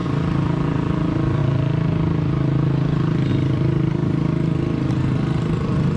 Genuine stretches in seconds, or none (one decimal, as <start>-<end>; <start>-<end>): 1.4-3.3; 4.0-5.4